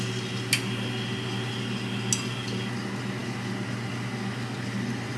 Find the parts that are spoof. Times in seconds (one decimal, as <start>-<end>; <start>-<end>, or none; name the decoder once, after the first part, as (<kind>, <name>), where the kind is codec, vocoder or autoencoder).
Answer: none